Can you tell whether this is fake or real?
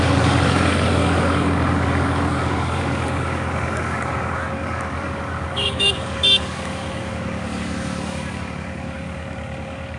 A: fake